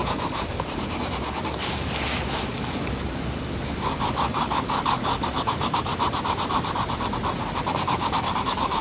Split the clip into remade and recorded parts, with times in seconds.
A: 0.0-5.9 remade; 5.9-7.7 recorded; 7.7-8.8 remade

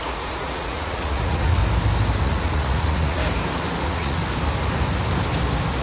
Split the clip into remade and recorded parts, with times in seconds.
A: 0.0-1.6 remade; 1.6-2.2 recorded; 2.2-3.2 remade; 3.2-3.8 recorded; 3.8-4.2 remade; 4.2-5.8 recorded